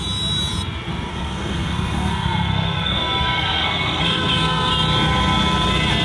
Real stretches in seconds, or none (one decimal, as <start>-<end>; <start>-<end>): 0.0-1.1; 4.7-6.0